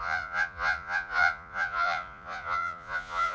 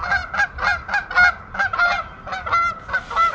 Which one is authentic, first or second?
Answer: second